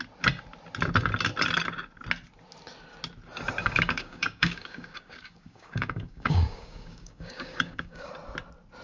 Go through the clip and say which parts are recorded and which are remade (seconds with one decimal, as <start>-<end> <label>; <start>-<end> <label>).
0.0-3.6 recorded; 3.6-8.1 remade; 8.1-8.8 recorded